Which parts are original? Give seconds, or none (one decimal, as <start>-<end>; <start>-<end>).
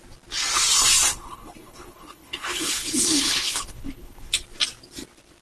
0.0-1.1; 4.3-5.4